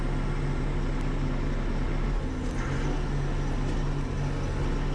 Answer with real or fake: real